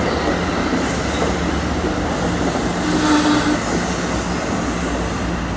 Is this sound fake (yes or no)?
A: no